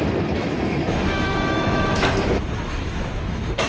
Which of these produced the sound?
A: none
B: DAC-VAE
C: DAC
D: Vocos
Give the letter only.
B